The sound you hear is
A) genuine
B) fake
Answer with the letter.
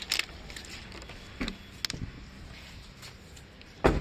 A